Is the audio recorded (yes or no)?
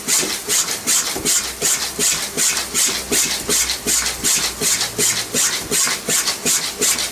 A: yes